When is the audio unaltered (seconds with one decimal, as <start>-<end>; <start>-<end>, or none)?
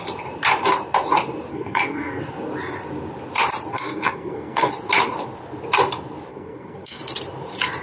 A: 0.0-1.5; 2.2-3.7; 4.7-6.3; 7.0-7.8